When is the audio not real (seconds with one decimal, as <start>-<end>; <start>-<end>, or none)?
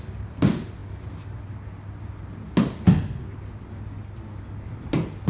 none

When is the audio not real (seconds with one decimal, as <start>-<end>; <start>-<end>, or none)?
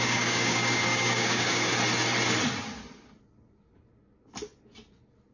0.0-1.7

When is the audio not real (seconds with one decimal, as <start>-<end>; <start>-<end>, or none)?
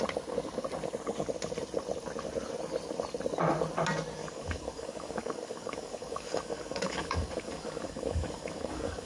4.2-9.1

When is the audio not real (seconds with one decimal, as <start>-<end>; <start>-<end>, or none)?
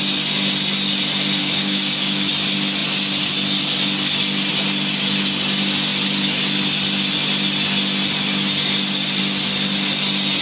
1.4-2.3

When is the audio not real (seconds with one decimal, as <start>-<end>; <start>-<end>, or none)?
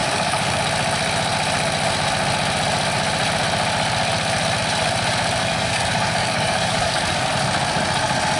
0.0-0.6; 5.4-7.3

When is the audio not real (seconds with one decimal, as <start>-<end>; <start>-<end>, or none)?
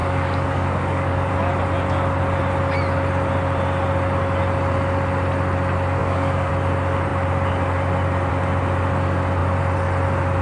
0.0-1.3; 6.0-6.5